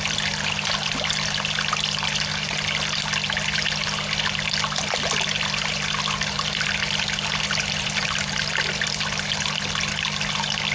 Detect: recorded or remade recorded